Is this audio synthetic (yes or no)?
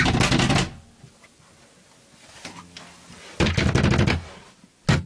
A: no